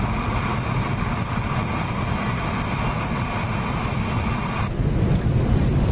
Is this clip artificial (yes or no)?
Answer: no